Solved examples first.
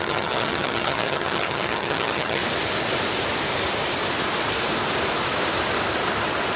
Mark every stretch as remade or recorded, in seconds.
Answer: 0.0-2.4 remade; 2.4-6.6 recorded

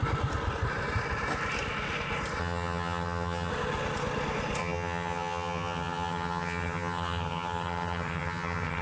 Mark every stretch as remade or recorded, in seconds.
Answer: 0.0-2.4 recorded; 2.4-3.5 remade; 3.5-4.6 recorded; 4.6-8.8 remade

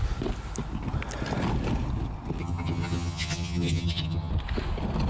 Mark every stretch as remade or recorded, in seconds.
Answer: 0.0-2.4 recorded; 2.4-4.3 remade; 4.3-5.1 recorded